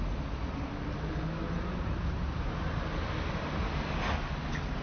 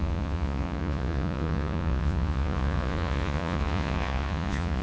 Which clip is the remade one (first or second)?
second